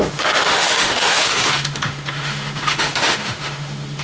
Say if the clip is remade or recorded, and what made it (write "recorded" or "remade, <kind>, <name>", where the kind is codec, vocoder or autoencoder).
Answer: remade, autoencoder, DAC-VAE